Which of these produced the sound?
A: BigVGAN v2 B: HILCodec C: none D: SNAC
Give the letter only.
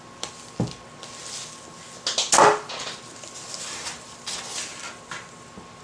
C